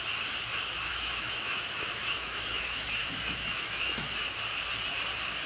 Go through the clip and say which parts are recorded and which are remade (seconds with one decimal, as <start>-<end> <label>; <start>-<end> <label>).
0.0-0.9 recorded; 0.9-4.2 remade; 4.2-5.5 recorded